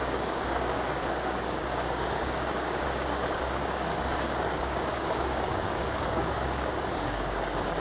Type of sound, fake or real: fake